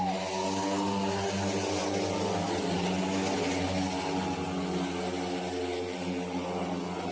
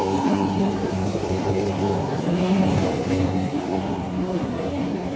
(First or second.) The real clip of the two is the first